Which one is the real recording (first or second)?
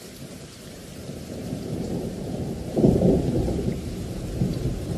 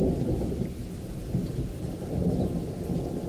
second